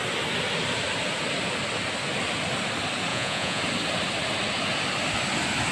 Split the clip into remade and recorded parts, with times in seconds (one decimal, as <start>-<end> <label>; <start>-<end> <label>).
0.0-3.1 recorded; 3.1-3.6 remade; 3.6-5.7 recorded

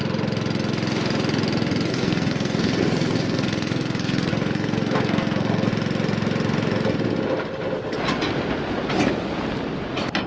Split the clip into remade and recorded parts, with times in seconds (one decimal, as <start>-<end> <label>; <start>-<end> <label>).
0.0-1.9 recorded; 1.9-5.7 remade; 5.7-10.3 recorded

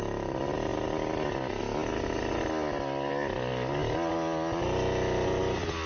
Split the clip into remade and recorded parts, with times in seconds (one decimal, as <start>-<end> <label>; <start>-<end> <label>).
0.0-5.9 recorded